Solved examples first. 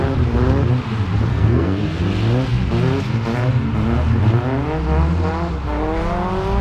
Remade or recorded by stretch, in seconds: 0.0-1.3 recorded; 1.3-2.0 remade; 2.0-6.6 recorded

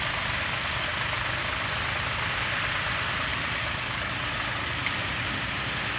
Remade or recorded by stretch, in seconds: 0.0-3.3 recorded; 3.3-4.1 remade; 4.1-6.0 recorded